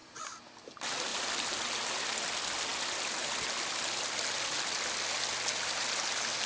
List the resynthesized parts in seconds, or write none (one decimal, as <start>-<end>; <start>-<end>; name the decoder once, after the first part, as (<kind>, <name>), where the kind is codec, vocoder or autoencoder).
0.0-0.6 (vocoder, BigVGAN v2); 1.1-1.6